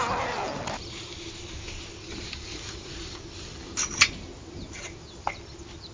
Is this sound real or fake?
real